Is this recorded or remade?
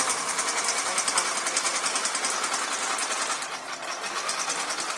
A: recorded